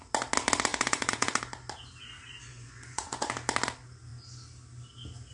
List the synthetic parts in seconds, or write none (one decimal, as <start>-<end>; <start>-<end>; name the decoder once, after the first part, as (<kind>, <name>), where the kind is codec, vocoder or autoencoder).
0.7-1.4 (vocoder, Vocos); 2.5-3.3